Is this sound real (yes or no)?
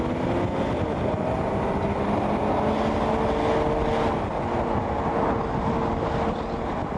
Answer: yes